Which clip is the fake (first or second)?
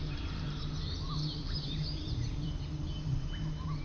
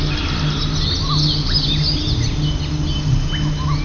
first